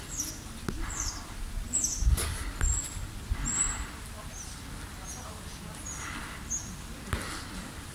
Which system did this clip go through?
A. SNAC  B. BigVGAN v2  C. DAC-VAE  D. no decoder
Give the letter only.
D